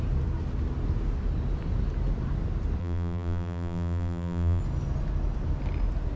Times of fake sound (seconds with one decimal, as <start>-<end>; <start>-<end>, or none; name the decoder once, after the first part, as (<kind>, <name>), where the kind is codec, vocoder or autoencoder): 2.8-4.6 (vocoder, BigVGAN v2)